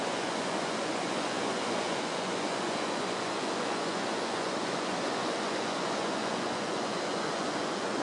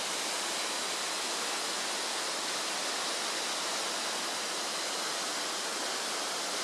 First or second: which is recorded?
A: second